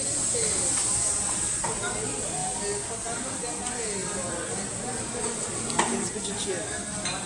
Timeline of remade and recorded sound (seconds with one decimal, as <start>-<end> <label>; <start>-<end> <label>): 0.0-7.3 recorded